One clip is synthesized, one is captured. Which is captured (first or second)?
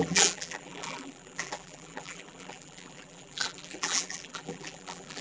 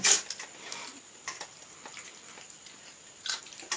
second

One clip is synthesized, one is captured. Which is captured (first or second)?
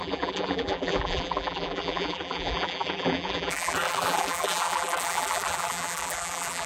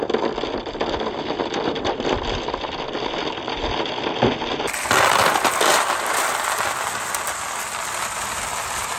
second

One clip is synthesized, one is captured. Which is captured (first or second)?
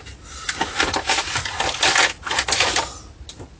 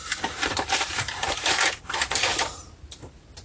first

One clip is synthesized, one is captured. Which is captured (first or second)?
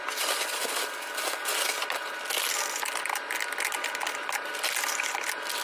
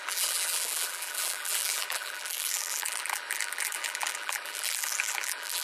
first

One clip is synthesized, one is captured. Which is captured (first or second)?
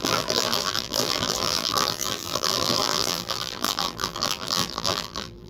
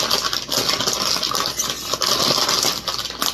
second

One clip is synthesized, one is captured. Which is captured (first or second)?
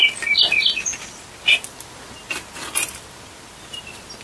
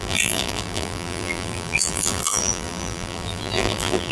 first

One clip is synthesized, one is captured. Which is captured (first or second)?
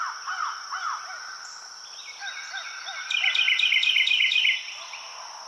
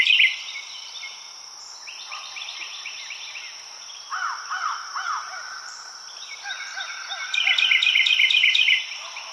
first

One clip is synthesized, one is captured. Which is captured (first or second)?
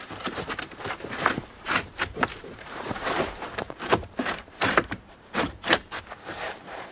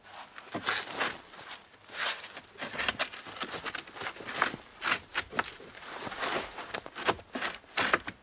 second